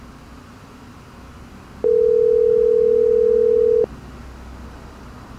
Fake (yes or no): no